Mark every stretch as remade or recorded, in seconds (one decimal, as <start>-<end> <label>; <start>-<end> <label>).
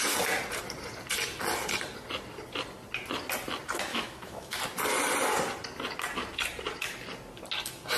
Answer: 0.0-3.9 recorded; 3.9-4.6 remade; 4.6-8.0 recorded